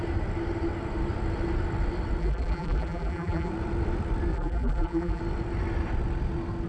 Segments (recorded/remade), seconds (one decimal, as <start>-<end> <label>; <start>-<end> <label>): 0.0-2.2 recorded; 2.2-3.5 remade; 3.5-4.3 recorded; 4.3-5.2 remade; 5.2-6.7 recorded